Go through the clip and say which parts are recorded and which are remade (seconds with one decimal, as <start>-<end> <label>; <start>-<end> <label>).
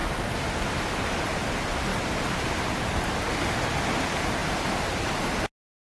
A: 0.0-5.9 recorded